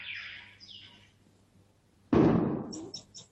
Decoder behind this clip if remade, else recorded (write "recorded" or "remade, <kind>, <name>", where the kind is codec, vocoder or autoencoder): recorded